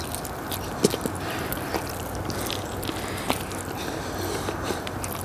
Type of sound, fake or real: real